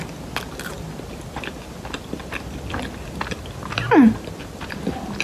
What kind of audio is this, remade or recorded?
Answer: recorded